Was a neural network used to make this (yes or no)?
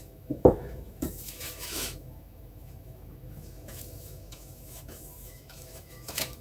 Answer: yes